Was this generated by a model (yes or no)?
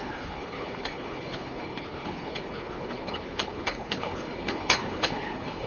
yes